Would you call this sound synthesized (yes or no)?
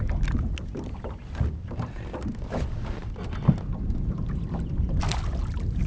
no